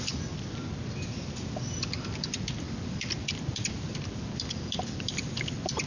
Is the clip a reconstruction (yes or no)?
no